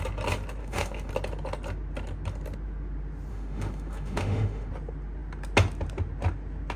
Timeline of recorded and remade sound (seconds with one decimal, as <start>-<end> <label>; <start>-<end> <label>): 0.0-0.6 recorded; 0.6-1.1 remade; 1.1-3.3 recorded; 3.3-4.7 remade; 4.7-6.8 recorded